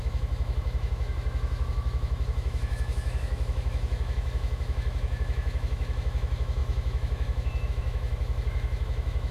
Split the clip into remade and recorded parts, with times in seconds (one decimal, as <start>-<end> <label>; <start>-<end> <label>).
0.0-9.3 remade